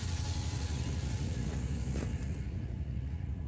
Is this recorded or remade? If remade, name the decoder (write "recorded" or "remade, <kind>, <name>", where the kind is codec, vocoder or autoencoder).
remade, vocoder, Vocos